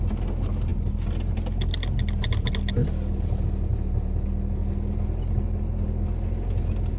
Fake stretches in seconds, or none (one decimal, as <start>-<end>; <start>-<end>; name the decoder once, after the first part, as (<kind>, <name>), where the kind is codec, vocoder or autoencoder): none